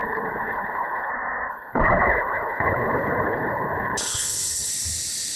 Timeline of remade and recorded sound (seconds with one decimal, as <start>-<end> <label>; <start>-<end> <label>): 0.0-1.1 remade; 1.1-1.5 recorded; 1.5-4.7 remade; 4.7-5.4 recorded